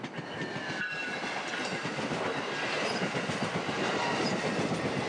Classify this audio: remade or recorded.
recorded